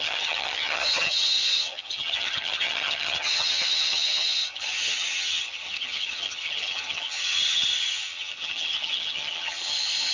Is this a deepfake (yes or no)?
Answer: yes